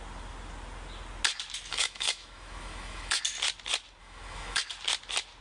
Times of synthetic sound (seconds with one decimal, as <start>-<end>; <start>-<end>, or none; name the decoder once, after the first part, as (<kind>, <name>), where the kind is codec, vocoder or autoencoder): 1.7-3.2 (autoencoder, DAC-VAE); 4.0-4.6